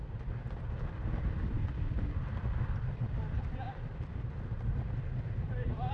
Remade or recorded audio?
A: recorded